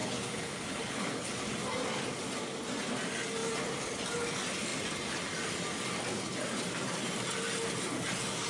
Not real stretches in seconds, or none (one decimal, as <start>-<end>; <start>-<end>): 0.0-1.3